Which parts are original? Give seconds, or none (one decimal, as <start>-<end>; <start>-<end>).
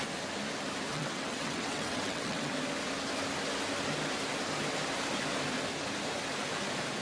0.0-0.9; 2.5-7.0